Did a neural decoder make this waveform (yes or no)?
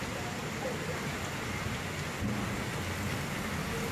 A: no